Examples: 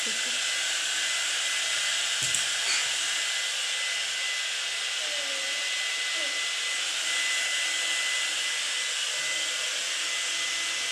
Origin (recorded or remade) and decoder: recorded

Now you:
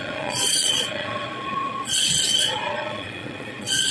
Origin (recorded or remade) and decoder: remade, vocoder, Vocos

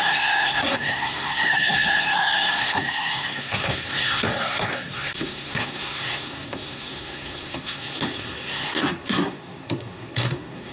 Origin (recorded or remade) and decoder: remade, codec, SNAC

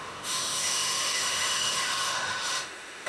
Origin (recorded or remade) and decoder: remade, autoencoder, DAC-VAE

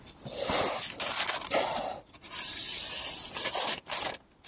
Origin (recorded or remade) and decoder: recorded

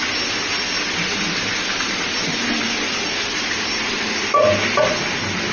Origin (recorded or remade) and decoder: recorded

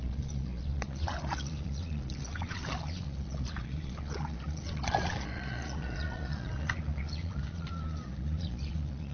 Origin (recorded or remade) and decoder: remade, vocoder, Vocos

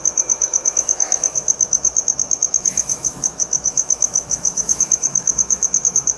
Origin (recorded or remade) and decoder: remade, autoencoder, DAC-VAE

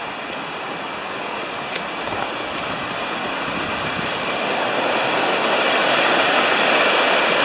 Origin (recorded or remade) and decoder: recorded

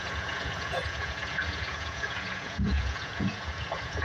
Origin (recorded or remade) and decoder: remade, vocoder, Vocos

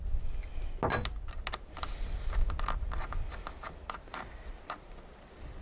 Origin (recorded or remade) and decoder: recorded